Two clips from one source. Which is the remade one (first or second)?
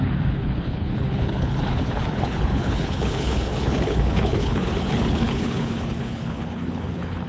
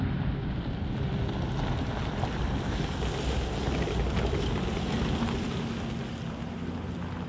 first